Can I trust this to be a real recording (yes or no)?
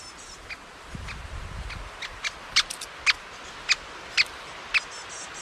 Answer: yes